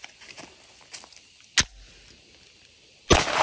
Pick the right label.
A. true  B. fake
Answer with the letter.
A